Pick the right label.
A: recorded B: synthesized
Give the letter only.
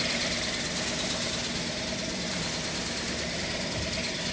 A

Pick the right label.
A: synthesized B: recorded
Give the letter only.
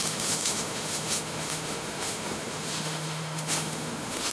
A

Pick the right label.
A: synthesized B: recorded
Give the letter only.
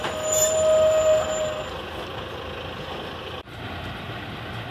B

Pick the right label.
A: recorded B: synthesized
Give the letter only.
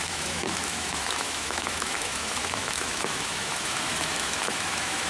B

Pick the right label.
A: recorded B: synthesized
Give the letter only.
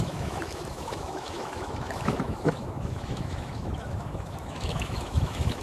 B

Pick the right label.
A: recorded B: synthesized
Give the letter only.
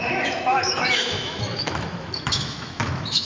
B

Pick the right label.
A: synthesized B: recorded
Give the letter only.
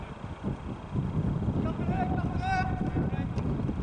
B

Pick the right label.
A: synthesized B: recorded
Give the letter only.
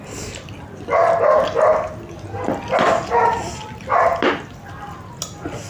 B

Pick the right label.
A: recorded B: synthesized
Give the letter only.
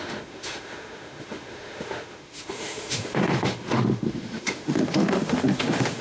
B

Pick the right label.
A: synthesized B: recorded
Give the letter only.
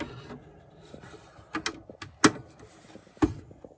B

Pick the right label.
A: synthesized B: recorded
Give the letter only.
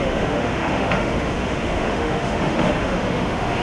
A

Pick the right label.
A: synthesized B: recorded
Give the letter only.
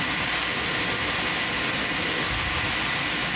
B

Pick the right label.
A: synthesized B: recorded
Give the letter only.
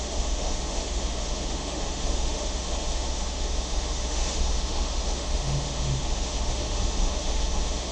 A